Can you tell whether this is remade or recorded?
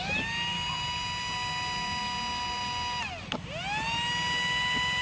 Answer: recorded